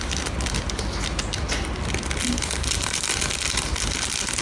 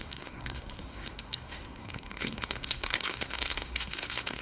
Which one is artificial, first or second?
second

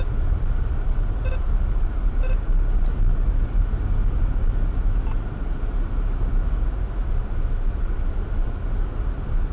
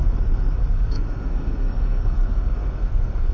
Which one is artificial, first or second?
second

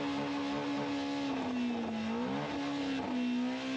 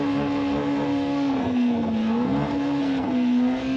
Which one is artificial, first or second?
second